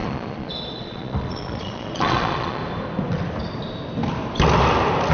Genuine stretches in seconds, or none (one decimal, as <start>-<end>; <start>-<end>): 2.6-5.1